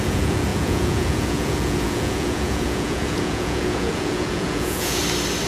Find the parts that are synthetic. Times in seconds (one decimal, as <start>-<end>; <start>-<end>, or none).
0.0-5.0